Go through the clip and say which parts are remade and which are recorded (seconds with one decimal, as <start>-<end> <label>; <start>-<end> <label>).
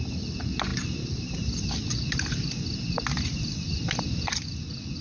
0.0-5.0 recorded